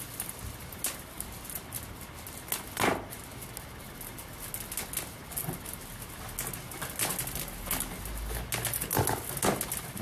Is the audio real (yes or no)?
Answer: yes